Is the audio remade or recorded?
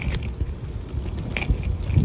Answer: recorded